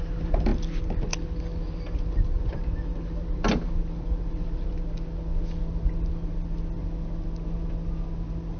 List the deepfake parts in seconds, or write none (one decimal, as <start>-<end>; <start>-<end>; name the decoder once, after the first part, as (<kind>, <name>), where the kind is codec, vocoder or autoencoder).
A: none